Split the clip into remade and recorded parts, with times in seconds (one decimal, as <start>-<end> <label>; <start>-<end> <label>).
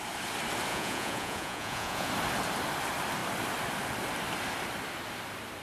0.0-0.7 recorded; 0.7-2.1 remade; 2.1-5.6 recorded